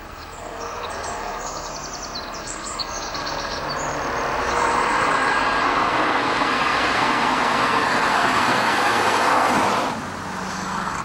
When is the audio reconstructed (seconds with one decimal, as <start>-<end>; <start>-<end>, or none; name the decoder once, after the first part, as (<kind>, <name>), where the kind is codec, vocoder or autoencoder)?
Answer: 0.0-1.7 (codec, SNAC); 2.4-3.6; 4.4-9.6; 10.5-11.0